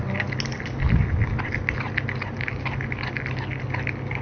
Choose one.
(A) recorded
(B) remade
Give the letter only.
A